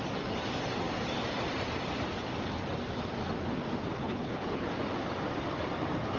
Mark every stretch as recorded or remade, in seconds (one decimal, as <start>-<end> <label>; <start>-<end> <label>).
0.0-4.0 recorded; 4.0-4.7 remade; 4.7-6.2 recorded